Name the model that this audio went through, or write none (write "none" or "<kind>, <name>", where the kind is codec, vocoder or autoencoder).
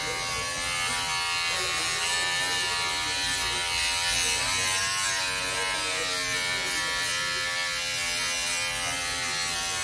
none